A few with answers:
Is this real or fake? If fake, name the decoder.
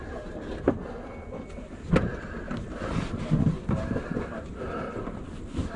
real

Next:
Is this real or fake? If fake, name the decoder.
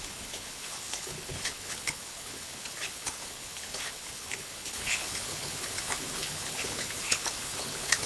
fake, codec, HILCodec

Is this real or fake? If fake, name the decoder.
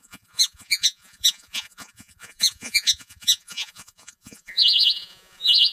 fake, vocoder, Vocos